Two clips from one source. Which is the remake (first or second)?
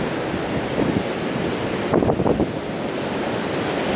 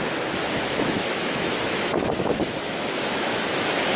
second